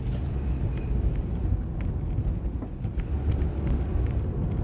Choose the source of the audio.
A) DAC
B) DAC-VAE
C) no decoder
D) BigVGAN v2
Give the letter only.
C